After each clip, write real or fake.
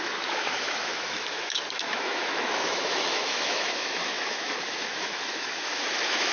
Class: fake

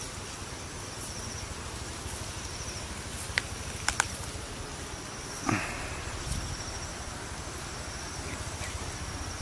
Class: real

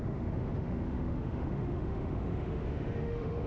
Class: fake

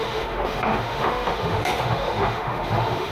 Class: fake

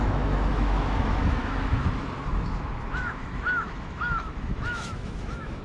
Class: fake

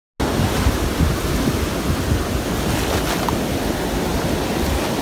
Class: real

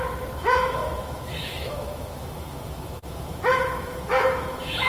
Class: fake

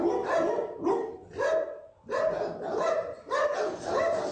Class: real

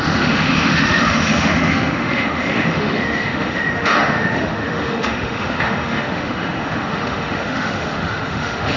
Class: fake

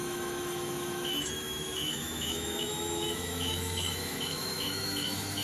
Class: fake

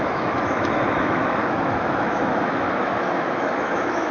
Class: fake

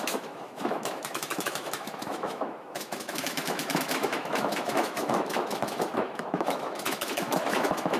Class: fake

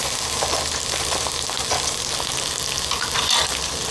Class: real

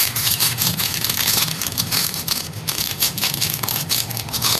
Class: fake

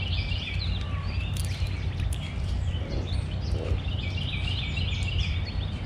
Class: real